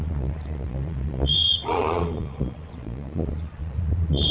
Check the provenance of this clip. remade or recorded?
remade